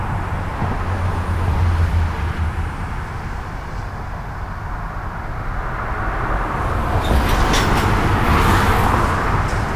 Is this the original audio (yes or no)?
yes